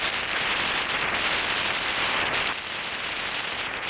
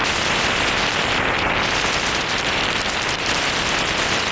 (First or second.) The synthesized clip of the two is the first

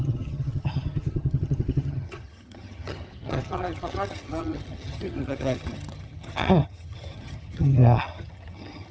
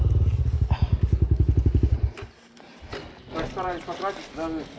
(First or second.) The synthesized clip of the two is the first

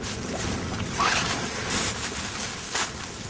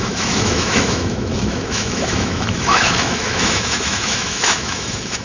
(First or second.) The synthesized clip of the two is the second